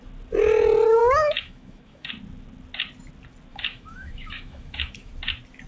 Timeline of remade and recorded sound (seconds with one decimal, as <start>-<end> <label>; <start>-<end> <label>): 0.0-1.0 recorded; 1.0-2.1 remade; 2.1-3.5 recorded; 3.5-5.1 remade; 5.1-5.7 recorded